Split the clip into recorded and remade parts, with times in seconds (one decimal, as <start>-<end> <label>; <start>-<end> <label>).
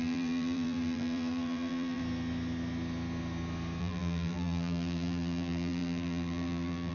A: 0.0-2.0 remade; 2.0-3.8 recorded; 3.8-6.9 remade